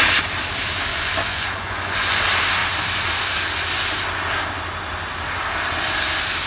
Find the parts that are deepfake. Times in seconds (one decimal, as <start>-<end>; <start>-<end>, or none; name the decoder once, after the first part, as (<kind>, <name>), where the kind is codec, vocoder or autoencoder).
0.9-2.2 (vocoder, Vocos)